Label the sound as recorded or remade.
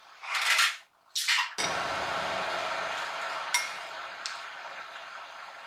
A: recorded